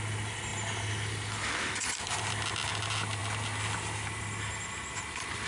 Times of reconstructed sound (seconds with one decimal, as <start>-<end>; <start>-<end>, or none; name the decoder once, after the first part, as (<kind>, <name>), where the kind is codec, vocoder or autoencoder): none